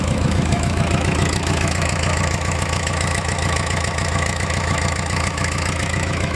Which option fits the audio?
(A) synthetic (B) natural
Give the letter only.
A